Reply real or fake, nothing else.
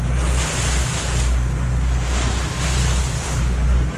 real